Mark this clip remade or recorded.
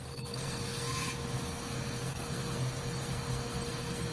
remade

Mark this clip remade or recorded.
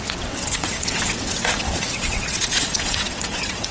remade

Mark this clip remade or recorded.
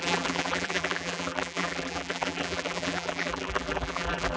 remade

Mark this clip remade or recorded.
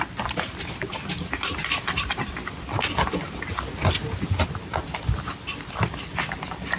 recorded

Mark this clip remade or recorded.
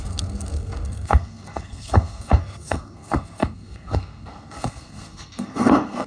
remade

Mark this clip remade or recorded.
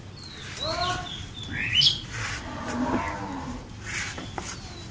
recorded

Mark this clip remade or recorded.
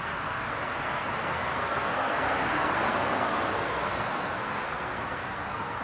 remade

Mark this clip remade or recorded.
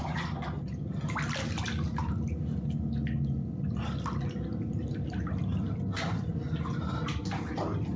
recorded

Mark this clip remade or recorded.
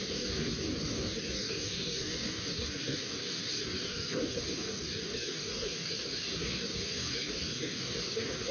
remade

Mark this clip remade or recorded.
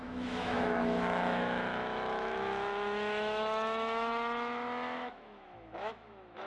remade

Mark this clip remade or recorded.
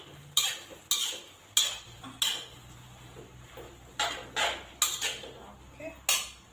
recorded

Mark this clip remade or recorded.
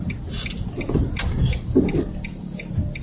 recorded